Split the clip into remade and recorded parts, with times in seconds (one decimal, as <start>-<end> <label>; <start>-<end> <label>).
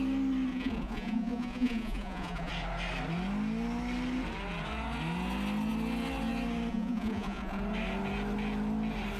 0.0-0.5 recorded; 0.5-2.5 remade; 2.5-6.7 recorded; 6.7-7.6 remade; 7.6-9.2 recorded